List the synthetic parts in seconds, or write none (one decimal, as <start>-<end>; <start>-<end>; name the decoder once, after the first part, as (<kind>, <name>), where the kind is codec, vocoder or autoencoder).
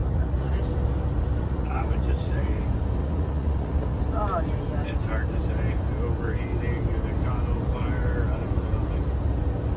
0.0-0.6 (vocoder, Vocos); 1.4-2.5; 3.0-4.0